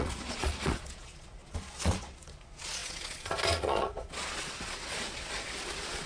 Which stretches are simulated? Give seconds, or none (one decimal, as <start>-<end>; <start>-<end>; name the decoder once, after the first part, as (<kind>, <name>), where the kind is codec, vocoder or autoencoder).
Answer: 0.0-6.1 (vocoder, Vocos)